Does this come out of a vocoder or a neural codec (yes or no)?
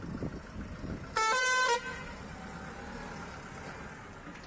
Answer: no